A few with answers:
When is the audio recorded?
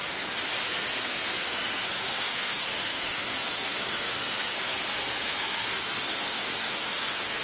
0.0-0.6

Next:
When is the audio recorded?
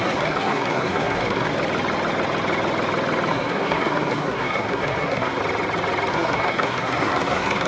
1.5-3.3; 5.4-6.1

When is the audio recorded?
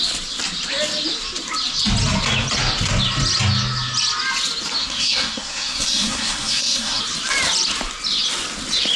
0.0-4.8; 7.0-9.0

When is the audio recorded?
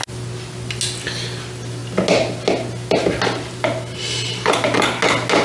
0.0-5.4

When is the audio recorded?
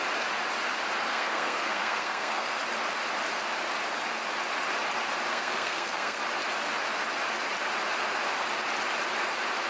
0.0-1.1; 2.6-5.3; 6.2-9.7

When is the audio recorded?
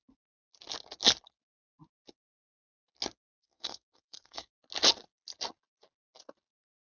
0.0-3.4; 4.5-6.9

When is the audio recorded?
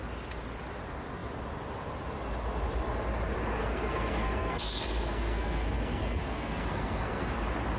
0.0-3.6; 7.3-7.8